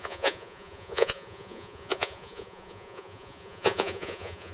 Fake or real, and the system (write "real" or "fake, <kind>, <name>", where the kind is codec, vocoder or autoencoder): fake, vocoder, Vocos